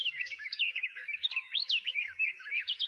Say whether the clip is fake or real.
fake